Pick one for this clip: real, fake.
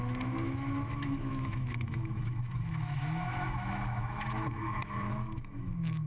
fake